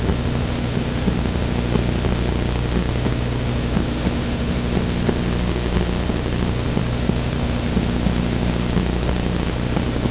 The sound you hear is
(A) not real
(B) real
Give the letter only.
A